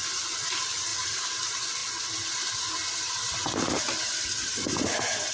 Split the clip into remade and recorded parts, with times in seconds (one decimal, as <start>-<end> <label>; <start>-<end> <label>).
0.0-5.3 recorded